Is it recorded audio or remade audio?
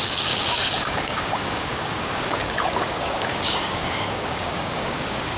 remade